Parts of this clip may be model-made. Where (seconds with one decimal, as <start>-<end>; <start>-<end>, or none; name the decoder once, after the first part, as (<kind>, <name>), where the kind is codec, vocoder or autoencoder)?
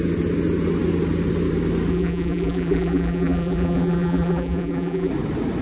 1.9-5.1 (vocoder, BigVGAN v2)